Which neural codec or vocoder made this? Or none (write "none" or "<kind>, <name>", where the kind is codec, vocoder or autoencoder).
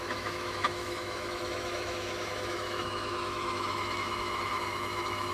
autoencoder, DAC-VAE